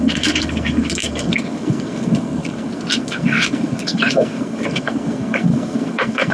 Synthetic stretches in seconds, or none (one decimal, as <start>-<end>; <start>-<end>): 0.0-6.3